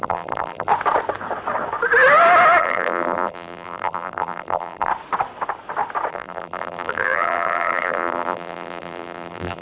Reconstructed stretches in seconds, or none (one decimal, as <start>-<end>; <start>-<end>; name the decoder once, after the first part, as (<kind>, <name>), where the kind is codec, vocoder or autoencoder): 0.0-0.7 (vocoder, BigVGAN v2); 2.6-4.9; 6.1-9.6

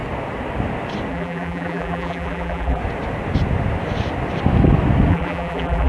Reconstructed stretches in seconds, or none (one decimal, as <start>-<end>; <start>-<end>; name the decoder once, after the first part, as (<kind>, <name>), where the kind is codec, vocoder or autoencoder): 1.1-2.8 (vocoder, BigVGAN v2); 5.1-5.9

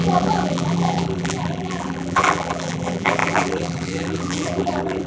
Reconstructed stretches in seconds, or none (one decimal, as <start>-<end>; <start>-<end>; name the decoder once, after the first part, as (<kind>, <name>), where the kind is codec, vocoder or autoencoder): 0.0-5.1 (vocoder, BigVGAN v2)

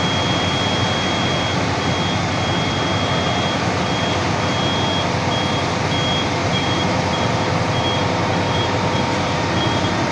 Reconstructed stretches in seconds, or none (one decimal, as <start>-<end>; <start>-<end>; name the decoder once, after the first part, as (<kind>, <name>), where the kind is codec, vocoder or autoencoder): 6.4-10.1 (vocoder, BigVGAN v2)

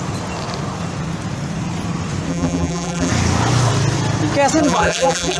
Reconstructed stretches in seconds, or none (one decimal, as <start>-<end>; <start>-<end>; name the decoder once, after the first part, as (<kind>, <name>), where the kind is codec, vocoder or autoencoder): 2.3-3.1 (vocoder, BigVGAN v2); 4.6-5.4

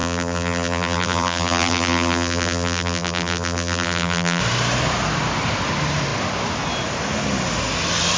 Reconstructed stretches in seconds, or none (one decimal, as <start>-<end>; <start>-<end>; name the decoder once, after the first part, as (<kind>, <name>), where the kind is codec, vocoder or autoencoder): 0.0-4.4 (vocoder, BigVGAN v2)

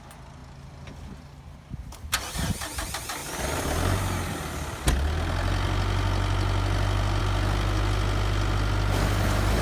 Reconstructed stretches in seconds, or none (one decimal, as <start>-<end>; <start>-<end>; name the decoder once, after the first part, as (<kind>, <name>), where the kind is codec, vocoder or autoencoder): none